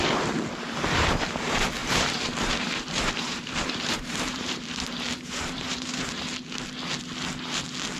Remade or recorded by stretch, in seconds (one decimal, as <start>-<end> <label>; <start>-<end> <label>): 0.0-1.8 recorded; 1.8-6.4 remade; 6.4-8.0 recorded